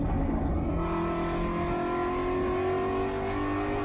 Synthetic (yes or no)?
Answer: no